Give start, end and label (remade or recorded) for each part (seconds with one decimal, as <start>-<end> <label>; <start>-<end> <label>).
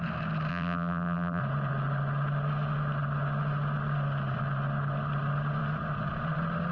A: 0.0-0.5 recorded; 0.5-1.4 remade; 1.4-6.7 recorded